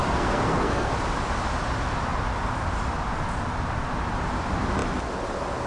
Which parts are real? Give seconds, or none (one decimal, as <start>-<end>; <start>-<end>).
0.9-5.7